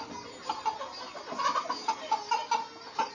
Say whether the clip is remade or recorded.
recorded